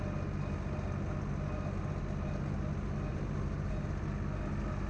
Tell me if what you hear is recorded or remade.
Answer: recorded